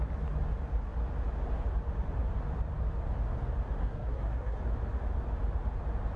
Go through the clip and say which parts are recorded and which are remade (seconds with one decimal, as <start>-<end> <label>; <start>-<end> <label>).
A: 0.0-3.8 recorded; 3.8-4.6 remade; 4.6-6.2 recorded